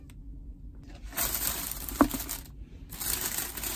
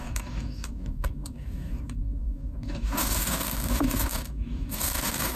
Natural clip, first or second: first